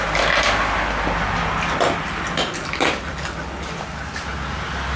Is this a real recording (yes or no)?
yes